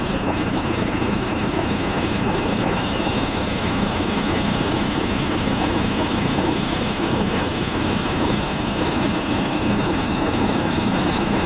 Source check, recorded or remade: remade